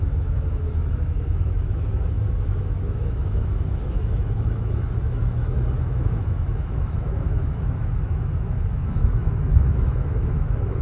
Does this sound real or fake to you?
fake